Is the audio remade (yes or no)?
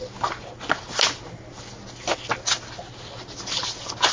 no